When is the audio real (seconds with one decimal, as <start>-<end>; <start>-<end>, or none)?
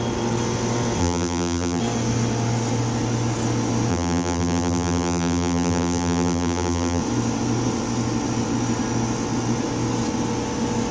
0.0-1.0; 1.8-3.9; 7.0-10.9